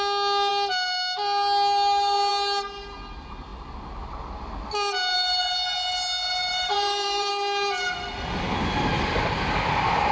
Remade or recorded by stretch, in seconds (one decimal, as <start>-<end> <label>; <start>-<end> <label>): 0.0-6.5 recorded; 6.5-7.3 remade; 7.3-10.1 recorded